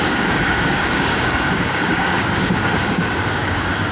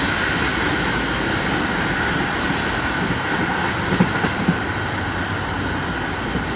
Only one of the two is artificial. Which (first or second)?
first